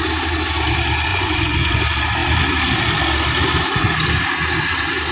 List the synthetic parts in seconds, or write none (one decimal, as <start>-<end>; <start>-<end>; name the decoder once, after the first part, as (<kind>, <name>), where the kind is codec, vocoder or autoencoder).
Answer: 1.1-1.8 (vocoder, Vocos)